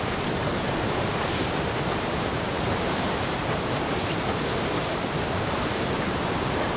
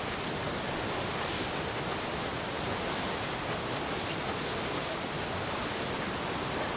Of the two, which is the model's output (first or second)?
first